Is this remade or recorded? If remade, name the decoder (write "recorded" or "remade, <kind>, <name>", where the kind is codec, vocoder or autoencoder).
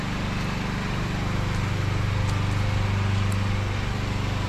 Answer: recorded